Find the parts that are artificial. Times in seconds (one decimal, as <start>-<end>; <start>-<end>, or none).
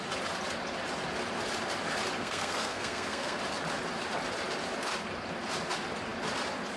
2.2-3.4